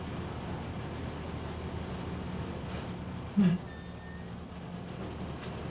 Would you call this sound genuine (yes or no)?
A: yes